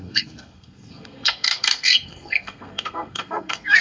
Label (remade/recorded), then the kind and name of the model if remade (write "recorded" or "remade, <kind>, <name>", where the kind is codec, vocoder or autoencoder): remade, codec, SNAC